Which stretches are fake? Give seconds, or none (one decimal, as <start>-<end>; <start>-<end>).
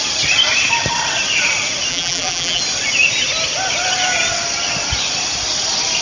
1.9-2.6